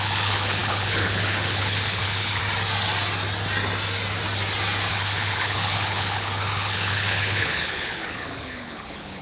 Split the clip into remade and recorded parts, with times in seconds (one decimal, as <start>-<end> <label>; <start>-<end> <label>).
0.0-2.4 remade; 2.4-4.9 recorded; 4.9-9.2 remade